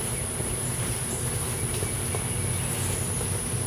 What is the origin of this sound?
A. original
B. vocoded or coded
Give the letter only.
A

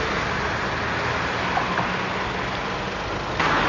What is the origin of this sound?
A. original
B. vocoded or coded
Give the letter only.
A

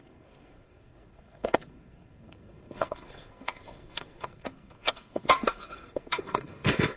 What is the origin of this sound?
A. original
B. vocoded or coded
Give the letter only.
B